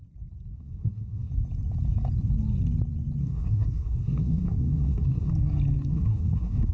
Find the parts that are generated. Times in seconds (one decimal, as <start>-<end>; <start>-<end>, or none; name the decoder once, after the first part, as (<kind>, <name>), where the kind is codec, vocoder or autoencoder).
0.5-1.3 (codec, SNAC); 3.2-5.3; 5.9-6.7